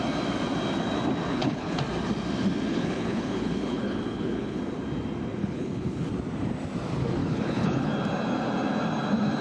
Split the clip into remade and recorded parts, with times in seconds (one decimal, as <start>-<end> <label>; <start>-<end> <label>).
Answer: 0.0-1.3 recorded; 1.3-1.8 remade; 1.8-2.7 recorded; 2.7-4.6 remade; 4.6-5.4 recorded; 5.4-6.1 remade; 6.1-7.2 recorded; 7.2-7.9 remade; 7.9-9.4 recorded